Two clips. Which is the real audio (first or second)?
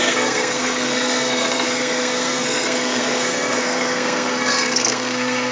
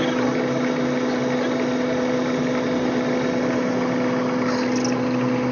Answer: second